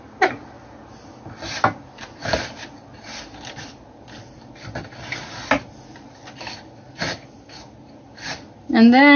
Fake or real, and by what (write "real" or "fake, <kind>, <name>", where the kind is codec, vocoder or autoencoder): real